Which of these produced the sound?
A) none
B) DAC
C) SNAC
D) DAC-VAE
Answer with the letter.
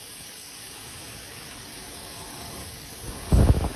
B